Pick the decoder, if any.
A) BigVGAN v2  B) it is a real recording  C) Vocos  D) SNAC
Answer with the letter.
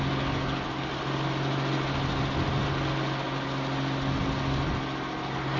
B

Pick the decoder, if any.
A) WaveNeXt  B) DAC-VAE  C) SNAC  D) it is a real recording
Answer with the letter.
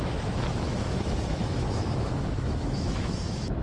B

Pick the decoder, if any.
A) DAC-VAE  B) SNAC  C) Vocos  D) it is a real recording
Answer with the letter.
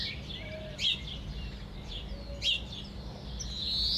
D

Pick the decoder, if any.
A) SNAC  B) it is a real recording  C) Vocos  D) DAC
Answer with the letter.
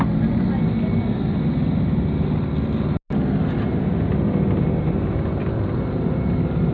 B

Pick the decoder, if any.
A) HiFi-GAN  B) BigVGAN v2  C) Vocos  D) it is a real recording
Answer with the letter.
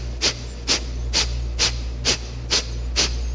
D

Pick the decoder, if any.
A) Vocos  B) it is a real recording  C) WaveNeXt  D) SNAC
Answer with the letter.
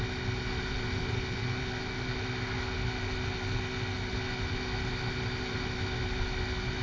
B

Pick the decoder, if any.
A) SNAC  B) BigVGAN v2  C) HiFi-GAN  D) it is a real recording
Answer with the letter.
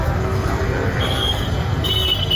A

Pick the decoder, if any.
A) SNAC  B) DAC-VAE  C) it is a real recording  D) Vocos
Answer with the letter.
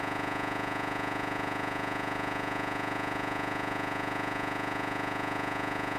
D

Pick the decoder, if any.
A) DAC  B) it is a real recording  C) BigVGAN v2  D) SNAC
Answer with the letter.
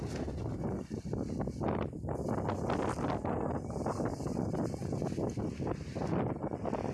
B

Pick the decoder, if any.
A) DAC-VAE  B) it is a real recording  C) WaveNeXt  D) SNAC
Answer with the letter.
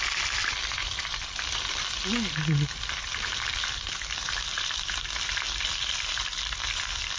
B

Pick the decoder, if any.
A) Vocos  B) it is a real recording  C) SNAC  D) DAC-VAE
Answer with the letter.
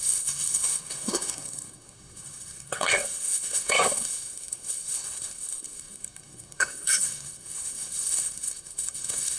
C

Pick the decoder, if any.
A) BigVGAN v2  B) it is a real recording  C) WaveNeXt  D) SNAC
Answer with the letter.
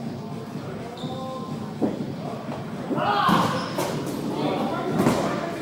B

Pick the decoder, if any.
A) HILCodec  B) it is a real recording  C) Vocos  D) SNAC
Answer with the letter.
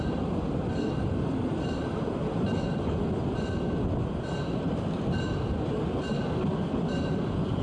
B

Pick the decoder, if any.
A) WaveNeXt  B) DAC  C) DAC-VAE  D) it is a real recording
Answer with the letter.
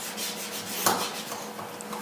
D